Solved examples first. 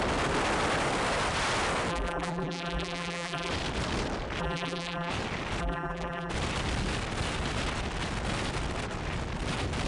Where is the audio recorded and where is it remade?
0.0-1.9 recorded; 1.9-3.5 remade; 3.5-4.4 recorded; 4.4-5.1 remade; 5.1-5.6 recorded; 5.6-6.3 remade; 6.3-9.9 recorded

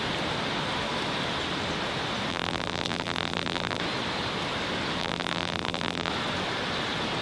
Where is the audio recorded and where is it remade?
0.0-2.3 recorded; 2.3-3.8 remade; 3.8-5.0 recorded; 5.0-6.1 remade; 6.1-7.2 recorded

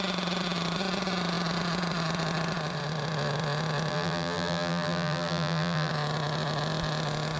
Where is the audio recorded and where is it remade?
0.0-3.9 recorded; 3.9-5.9 remade; 5.9-7.4 recorded

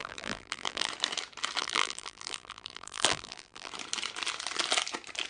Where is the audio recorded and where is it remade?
0.0-0.9 remade; 0.9-1.6 recorded; 1.6-3.7 remade; 3.7-5.3 recorded

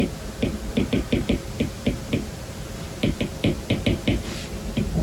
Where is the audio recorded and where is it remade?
0.0-0.7 recorded; 0.7-3.7 remade; 3.7-5.0 recorded

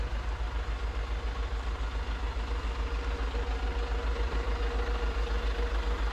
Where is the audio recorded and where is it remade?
0.0-4.1 recorded; 4.1-4.6 remade; 4.6-6.1 recorded